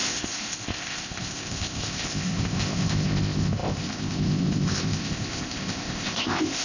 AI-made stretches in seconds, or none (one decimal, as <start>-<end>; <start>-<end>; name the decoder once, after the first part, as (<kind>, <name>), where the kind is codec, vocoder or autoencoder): 0.0-6.6 (codec, ZipCodec)